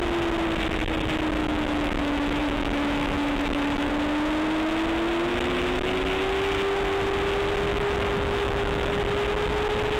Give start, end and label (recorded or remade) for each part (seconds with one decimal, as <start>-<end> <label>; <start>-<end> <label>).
0.0-1.4 recorded; 1.4-3.9 remade; 3.9-5.3 recorded; 5.3-5.9 remade; 5.9-7.7 recorded; 7.7-9.0 remade; 9.0-10.0 recorded